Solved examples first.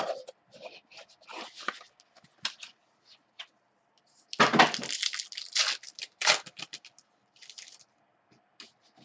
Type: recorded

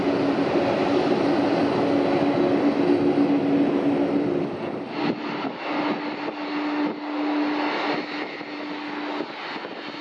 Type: recorded